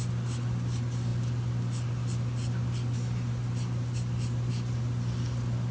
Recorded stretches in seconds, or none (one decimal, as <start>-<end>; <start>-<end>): 0.0-5.7